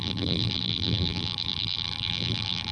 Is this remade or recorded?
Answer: remade